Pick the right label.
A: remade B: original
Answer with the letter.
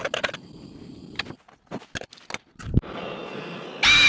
B